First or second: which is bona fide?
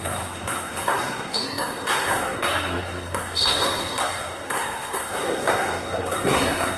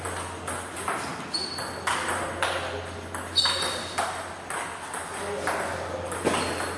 second